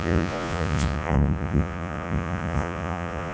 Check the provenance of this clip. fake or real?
fake